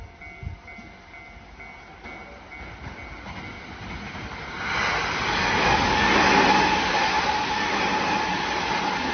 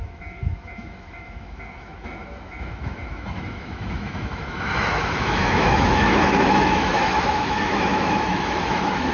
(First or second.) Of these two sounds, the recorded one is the first